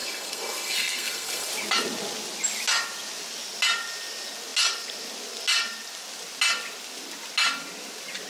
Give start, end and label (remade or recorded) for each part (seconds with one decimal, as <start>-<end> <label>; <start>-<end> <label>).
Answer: 0.0-1.5 remade; 1.5-8.3 recorded